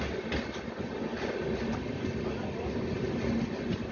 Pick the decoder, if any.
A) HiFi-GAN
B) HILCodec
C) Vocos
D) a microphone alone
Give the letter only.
D